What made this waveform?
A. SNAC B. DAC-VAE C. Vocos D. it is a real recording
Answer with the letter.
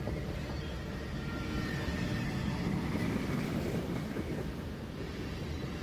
D